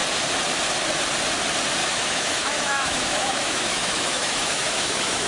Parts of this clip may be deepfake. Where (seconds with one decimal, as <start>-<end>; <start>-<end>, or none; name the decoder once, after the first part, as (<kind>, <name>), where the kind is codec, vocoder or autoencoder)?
1.8-5.3 (autoencoder, DAC-VAE)